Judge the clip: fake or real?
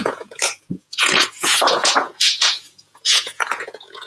fake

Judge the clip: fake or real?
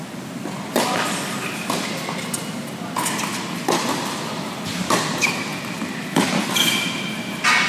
real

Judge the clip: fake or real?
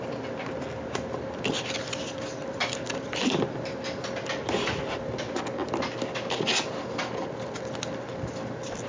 real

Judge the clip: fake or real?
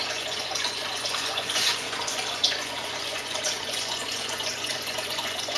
fake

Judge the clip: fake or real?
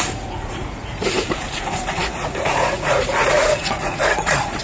fake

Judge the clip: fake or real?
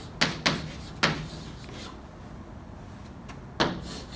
real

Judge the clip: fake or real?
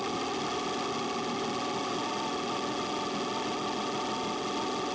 real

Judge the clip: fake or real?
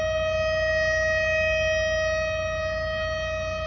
real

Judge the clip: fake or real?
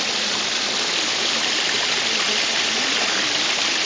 real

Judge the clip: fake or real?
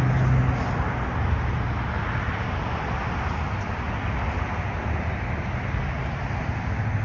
real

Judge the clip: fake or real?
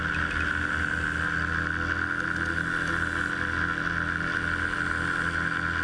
real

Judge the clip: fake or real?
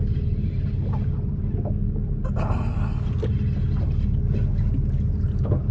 real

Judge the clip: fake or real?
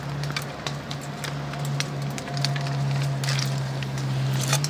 real